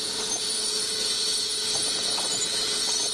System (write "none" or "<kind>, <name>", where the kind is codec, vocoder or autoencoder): vocoder, Vocos